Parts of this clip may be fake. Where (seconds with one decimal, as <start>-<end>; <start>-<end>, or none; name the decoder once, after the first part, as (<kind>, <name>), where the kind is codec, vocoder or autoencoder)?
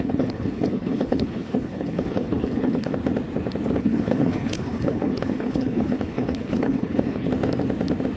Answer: 0.0-3.0 (codec, HILCodec); 3.8-7.3